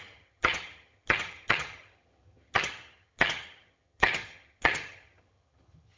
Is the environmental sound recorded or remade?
remade